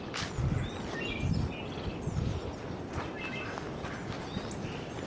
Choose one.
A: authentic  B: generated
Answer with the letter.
A